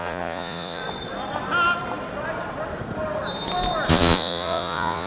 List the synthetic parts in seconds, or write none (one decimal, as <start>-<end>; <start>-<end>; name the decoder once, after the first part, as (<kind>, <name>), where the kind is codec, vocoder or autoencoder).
0.0-0.8 (vocoder, Vocos); 3.9-5.1